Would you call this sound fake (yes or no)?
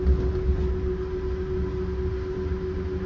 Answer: no